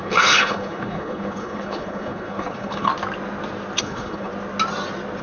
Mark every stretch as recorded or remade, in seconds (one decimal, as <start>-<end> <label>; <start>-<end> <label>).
0.0-2.9 remade; 2.9-3.8 recorded; 3.8-4.3 remade; 4.3-5.2 recorded